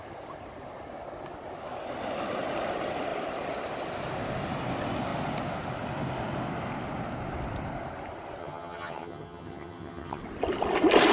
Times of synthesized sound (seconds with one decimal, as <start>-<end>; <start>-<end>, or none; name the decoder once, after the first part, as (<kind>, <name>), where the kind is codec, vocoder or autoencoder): 8.4-10.2 (vocoder, HiFi-GAN)